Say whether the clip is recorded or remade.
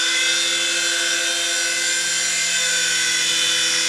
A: recorded